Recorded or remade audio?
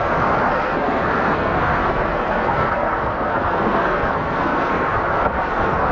remade